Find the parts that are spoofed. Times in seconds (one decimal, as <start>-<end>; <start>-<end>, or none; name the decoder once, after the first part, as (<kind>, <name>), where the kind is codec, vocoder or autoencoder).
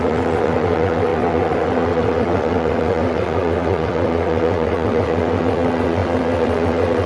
0.0-7.1 (vocoder, WaveNeXt)